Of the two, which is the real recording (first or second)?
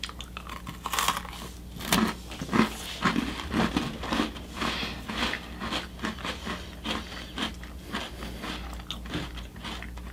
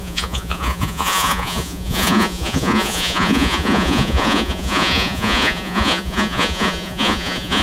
first